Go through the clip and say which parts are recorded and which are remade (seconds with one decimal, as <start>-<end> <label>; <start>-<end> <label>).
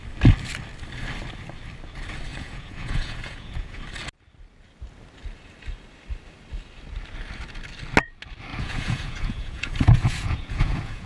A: 0.0-2.3 recorded; 2.3-3.8 remade; 3.8-8.5 recorded; 8.5-11.1 remade